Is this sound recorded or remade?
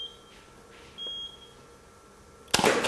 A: recorded